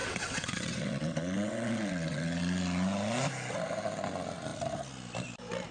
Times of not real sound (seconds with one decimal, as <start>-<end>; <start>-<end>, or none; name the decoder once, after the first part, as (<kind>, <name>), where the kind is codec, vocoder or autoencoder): 0.0-2.4 (vocoder, WaveNeXt)